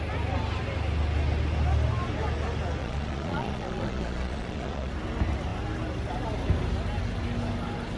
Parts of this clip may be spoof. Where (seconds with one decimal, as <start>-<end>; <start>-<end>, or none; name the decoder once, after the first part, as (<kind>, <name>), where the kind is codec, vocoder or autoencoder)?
2.8-4.9 (vocoder, Vocos)